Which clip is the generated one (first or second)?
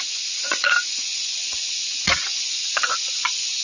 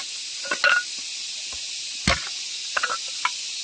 first